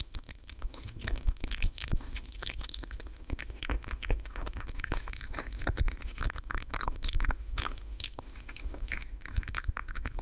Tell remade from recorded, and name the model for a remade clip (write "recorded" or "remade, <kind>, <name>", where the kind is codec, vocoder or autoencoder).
remade, autoencoder, DAC-VAE